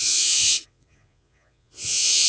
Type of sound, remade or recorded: remade